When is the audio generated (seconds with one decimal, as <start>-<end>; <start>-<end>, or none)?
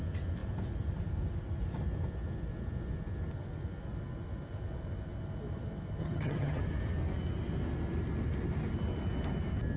6.0-6.6